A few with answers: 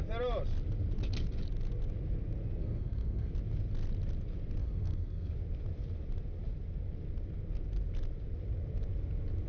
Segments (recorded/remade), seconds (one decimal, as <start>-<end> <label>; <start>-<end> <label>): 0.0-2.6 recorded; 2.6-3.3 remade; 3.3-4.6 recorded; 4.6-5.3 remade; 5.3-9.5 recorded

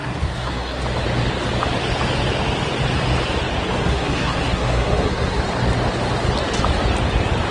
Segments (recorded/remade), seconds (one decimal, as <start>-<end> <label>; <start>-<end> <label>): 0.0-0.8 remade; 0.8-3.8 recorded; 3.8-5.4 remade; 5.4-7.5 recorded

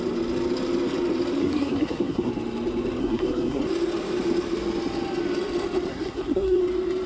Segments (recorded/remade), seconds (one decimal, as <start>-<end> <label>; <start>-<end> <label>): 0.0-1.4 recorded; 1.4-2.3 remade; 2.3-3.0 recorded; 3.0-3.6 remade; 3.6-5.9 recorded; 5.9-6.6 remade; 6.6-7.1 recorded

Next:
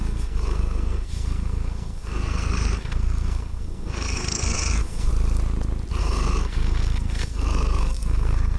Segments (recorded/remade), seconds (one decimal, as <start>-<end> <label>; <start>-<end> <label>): 0.0-5.1 remade; 5.1-6.0 recorded; 6.0-8.6 remade

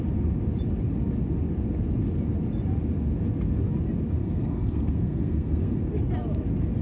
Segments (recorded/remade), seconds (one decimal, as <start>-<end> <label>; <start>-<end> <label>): 0.0-4.2 recorded; 4.2-5.8 remade; 5.8-6.8 recorded